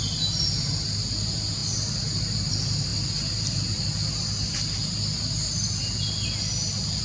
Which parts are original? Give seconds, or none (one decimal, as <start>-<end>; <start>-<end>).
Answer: 0.0-7.0